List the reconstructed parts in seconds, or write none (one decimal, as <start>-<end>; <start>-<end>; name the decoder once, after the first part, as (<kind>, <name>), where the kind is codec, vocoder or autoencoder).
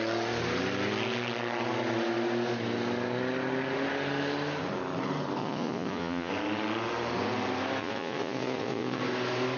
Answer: 5.4-6.3 (vocoder, Vocos); 7.8-9.0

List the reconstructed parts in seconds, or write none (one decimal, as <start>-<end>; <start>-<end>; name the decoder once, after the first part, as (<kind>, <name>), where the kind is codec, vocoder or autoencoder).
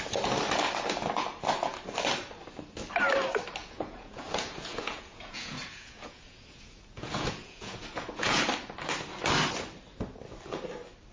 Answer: 3.6-8.4 (vocoder, Vocos)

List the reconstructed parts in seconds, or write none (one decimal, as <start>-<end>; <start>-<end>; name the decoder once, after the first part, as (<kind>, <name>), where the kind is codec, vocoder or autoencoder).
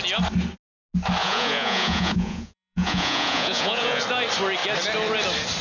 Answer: 1.2-4.0 (vocoder, Vocos)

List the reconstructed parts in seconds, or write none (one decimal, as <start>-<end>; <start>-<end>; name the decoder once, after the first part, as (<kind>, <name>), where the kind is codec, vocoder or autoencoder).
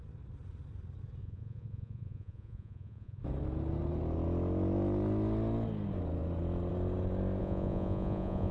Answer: 1.2-3.2 (vocoder, Vocos); 7.4-8.5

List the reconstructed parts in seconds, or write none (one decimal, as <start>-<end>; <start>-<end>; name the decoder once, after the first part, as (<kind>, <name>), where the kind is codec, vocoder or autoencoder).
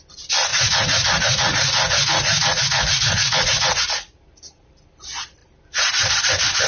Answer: 0.5-4.2 (vocoder, Vocos)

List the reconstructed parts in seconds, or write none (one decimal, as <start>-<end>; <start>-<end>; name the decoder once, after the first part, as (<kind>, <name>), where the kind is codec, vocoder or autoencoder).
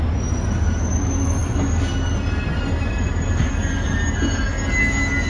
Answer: none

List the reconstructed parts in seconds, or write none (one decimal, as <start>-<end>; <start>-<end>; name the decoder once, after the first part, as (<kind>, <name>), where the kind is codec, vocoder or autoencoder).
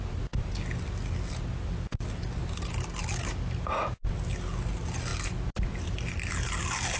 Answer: none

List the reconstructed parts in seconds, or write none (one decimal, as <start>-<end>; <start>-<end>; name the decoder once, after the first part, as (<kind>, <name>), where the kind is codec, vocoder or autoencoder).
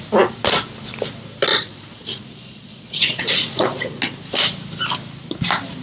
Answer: 1.5-4.0 (vocoder, Vocos)